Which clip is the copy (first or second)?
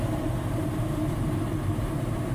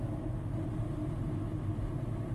first